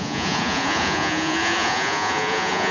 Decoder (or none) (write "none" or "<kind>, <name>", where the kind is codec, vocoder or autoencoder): vocoder, Vocos